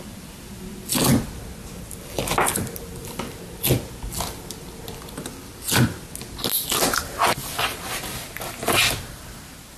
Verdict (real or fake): real